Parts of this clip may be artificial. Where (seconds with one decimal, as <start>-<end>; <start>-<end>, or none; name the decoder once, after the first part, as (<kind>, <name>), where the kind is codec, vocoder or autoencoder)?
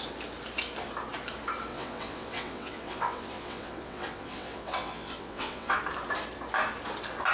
1.7-5.8 (vocoder, WaveNeXt)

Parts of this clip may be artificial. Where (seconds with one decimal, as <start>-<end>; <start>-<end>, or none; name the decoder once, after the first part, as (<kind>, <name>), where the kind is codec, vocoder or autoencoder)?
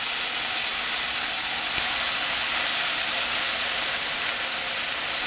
none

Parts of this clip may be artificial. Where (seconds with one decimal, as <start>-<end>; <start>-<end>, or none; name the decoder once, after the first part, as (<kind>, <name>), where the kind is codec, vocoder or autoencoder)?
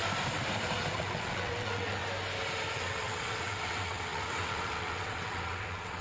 0.9-2.0 (vocoder, WaveNeXt); 2.7-6.0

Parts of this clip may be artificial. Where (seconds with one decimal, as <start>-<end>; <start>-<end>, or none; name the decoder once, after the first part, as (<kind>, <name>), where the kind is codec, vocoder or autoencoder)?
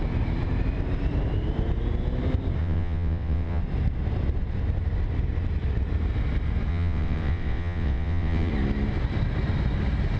2.6-3.6 (vocoder, WaveNeXt); 6.7-8.5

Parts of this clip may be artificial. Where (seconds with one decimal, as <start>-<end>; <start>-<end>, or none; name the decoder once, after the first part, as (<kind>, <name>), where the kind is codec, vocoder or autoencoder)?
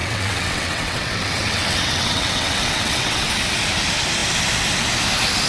0.0-3.3 (vocoder, WaveNeXt)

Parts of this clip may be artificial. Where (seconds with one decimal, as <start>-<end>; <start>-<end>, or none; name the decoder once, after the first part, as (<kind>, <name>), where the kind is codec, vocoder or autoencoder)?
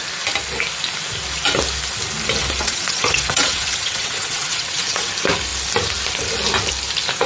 2.4-5.1 (vocoder, WaveNeXt)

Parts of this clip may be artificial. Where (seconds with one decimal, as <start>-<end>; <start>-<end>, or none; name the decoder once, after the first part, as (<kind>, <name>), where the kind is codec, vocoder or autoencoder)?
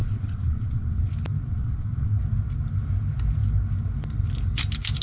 0.0-1.0 (vocoder, WaveNeXt); 1.5-2.2